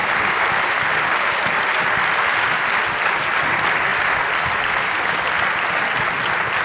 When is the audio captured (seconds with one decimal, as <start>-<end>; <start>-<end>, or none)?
0.0-6.6